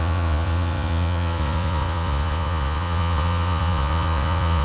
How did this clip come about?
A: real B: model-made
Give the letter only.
B